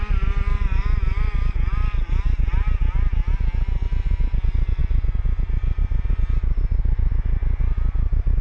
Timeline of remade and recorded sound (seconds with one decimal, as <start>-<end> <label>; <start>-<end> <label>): 0.0-8.4 recorded

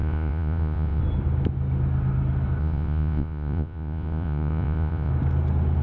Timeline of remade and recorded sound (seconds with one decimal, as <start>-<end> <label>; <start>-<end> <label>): 0.0-1.0 remade; 1.0-2.6 recorded; 2.6-5.1 remade; 5.1-5.8 recorded

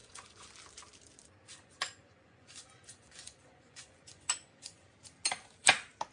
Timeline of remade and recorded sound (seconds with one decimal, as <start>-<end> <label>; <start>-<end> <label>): 0.0-0.5 remade; 0.5-1.5 recorded; 1.5-4.9 remade; 4.9-6.1 recorded

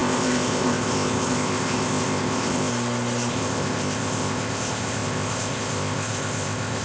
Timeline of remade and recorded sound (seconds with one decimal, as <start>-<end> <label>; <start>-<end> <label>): 0.0-2.7 remade; 2.7-3.3 recorded; 3.3-6.8 remade

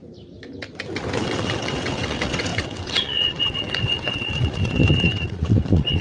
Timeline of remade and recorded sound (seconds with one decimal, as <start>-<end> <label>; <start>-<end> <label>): 0.0-1.2 recorded; 1.2-6.0 remade

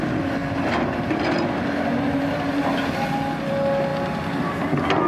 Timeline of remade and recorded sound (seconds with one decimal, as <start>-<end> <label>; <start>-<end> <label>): 0.0-5.1 recorded